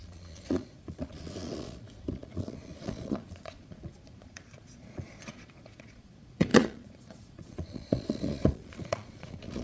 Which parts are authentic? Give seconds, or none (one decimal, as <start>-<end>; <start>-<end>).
none